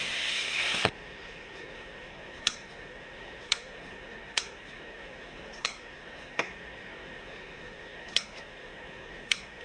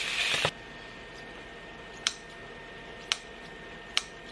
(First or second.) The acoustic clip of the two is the second